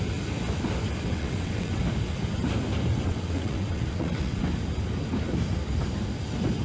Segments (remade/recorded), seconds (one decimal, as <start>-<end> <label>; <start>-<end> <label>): 0.0-1.1 recorded; 1.1-1.8 remade; 1.8-2.9 recorded; 2.9-4.4 remade; 4.4-6.6 recorded